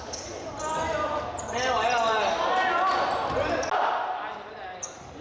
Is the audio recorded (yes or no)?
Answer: yes